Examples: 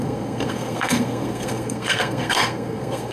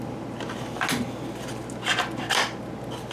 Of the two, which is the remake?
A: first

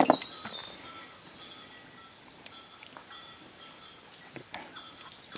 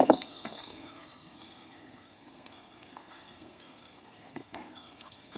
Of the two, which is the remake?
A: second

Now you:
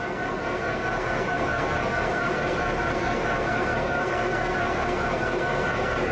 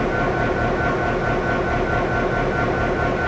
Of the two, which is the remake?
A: first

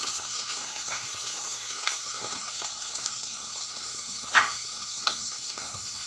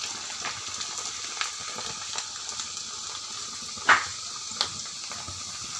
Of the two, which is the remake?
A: first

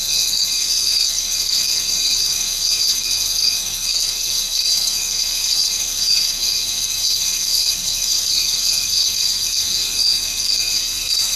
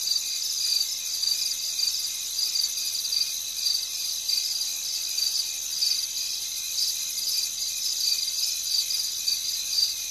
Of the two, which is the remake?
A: first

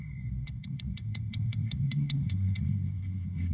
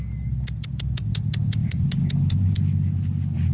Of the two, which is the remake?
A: first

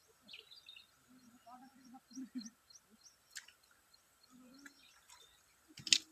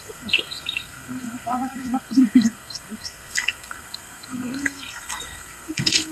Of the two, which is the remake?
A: second